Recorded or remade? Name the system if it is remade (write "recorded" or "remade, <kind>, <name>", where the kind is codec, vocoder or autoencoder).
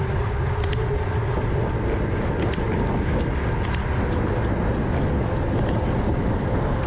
recorded